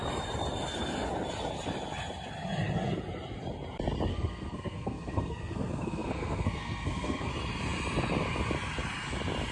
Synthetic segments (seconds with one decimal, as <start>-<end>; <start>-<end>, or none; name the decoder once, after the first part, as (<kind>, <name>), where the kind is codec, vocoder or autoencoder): 4.1-7.3 (codec, SNAC)